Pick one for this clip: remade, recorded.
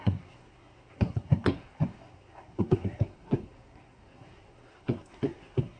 remade